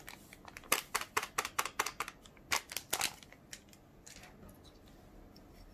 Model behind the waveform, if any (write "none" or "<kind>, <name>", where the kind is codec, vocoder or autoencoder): none